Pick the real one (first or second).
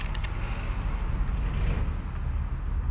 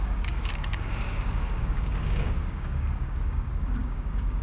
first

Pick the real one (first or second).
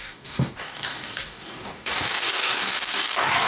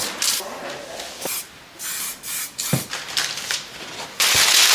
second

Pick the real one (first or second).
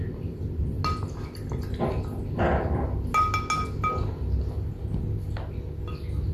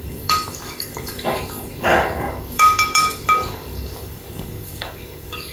first